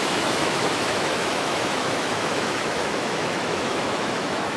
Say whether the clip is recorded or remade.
remade